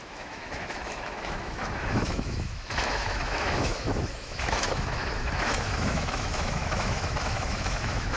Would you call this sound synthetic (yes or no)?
yes